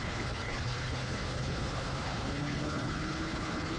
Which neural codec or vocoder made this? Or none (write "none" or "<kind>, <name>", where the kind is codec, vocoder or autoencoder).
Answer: codec, HILCodec